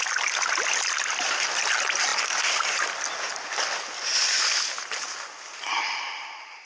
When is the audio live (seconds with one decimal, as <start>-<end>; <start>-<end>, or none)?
0.0-6.7